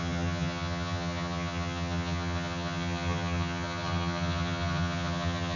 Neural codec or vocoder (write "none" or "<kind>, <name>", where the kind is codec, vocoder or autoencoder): vocoder, HiFi-GAN